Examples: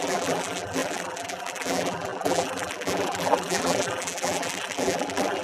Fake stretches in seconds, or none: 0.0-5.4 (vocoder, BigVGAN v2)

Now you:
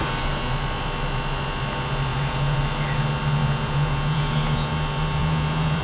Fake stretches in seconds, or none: 2.1-2.6 (vocoder, Vocos); 3.4-4.7; 5.2-5.8

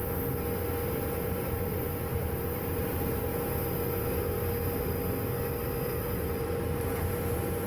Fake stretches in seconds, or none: 0.8-3.3 (vocoder, BigVGAN v2); 5.8-7.7

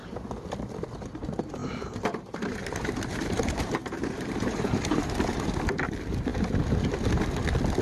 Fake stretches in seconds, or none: 1.6-5.4 (vocoder, BigVGAN v2)

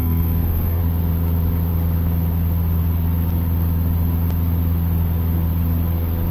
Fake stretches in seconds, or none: 0.0-0.8 (codec, SNAC)

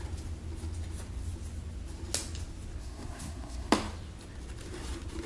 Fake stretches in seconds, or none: 2.8-3.7 (codec, SNAC)

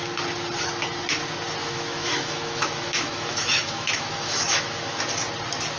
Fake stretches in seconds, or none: 1.6-5.0 (autoencoder, DAC-VAE)

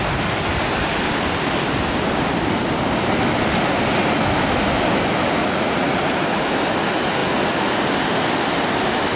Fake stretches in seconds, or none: 5.4-6.0 (vocoder, Vocos)